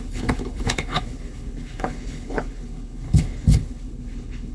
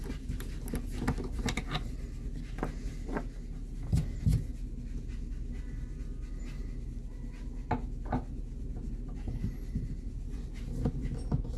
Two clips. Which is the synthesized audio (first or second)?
first